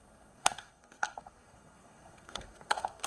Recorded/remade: remade